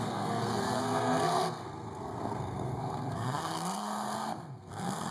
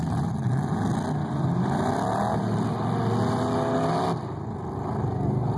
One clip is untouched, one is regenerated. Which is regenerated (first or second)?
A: first